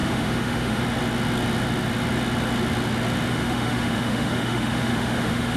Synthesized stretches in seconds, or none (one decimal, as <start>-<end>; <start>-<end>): 0.0-0.8; 3.3-5.6